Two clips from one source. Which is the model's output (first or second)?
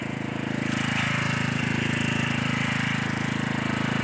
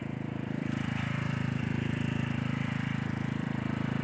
second